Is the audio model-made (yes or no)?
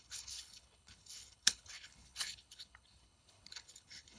yes